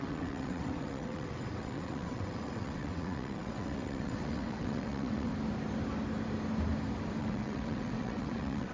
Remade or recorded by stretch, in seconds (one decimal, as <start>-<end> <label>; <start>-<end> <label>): 0.0-5.3 remade; 5.3-7.2 recorded; 7.2-8.7 remade